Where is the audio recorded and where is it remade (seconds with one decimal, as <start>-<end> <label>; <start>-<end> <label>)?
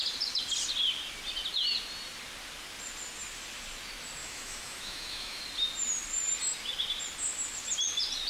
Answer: 0.0-4.2 recorded; 4.2-5.4 remade; 5.4-8.3 recorded